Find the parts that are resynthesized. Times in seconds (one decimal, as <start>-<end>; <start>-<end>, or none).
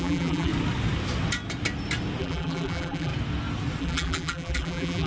0.0-0.5; 2.2-3.1; 3.8-5.1